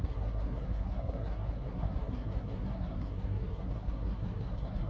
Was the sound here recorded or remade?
remade